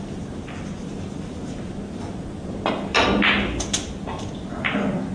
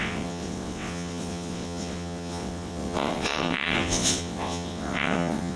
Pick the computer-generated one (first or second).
second